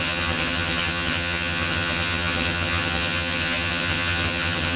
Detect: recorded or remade remade